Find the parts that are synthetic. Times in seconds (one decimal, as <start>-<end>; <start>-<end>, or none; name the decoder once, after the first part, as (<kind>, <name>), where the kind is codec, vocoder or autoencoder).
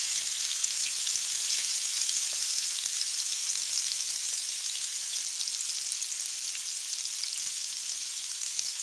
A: 0.0-5.2 (autoencoder, DAC-VAE); 7.4-8.8